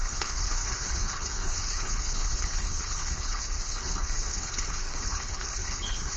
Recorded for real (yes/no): no